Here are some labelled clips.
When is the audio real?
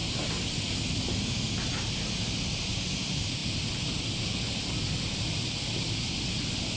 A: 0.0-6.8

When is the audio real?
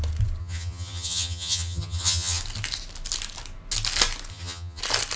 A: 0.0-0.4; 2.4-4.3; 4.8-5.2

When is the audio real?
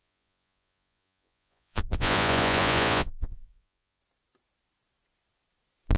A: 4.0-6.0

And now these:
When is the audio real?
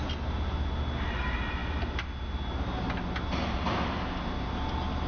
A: 0.0-5.1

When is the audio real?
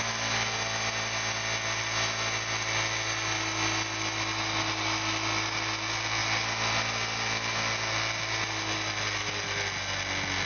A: 0.0-10.5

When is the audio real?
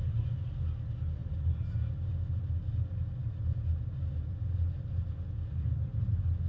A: 0.0-6.5